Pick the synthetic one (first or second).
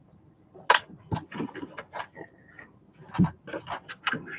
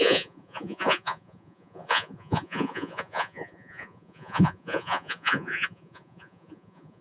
second